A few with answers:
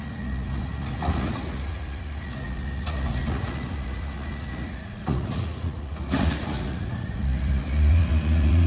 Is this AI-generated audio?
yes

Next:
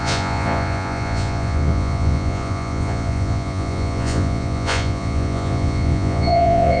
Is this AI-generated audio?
yes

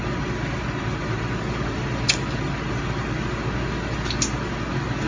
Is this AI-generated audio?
no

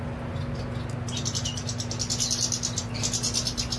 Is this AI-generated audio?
no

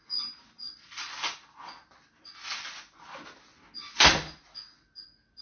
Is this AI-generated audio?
no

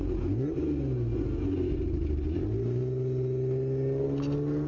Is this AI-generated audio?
no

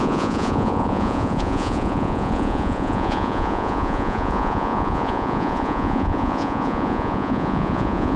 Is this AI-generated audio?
yes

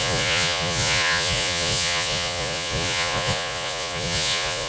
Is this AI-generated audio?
yes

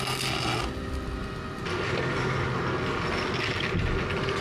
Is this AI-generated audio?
no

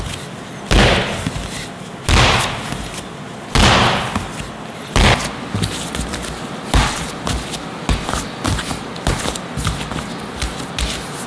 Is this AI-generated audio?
no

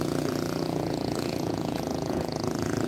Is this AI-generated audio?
yes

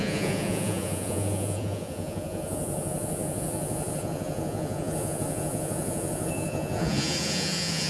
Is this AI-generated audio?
yes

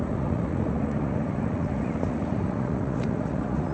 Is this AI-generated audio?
yes